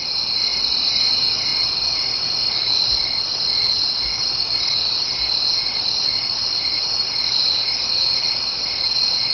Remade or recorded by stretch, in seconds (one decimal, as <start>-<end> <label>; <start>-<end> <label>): 0.0-9.3 recorded